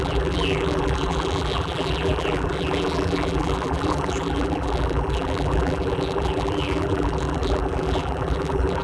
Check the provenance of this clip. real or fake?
fake